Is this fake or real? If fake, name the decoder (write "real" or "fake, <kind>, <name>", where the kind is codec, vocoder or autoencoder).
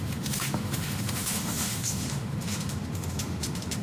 fake, autoencoder, DAC-VAE